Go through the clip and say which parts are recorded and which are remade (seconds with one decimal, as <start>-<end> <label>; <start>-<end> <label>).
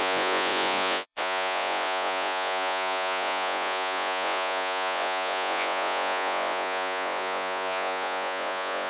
0.0-8.9 remade